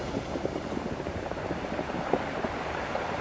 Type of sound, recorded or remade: remade